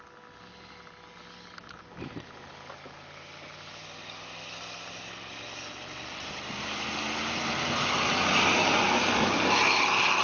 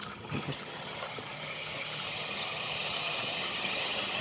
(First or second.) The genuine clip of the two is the first